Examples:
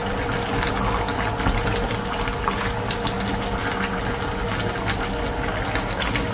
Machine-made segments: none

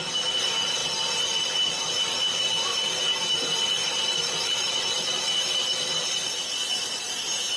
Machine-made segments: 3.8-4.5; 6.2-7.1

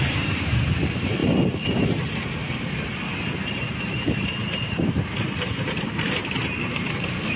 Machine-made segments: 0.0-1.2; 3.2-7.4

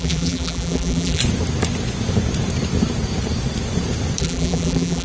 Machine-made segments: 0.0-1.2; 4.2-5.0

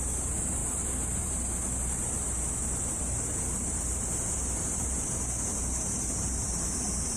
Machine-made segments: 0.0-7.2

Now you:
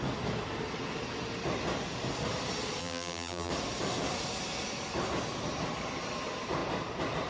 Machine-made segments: 2.8-3.5

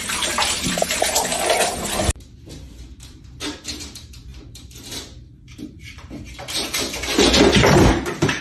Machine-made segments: 0.0-1.3; 2.7-8.4